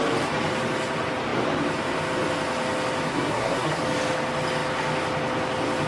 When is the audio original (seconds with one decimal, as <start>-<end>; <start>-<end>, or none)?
0.0-3.1; 3.8-5.9